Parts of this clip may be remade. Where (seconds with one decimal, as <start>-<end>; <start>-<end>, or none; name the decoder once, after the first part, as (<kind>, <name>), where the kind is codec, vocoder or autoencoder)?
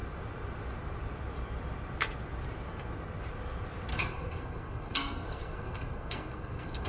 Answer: 3.9-6.9 (codec, SNAC)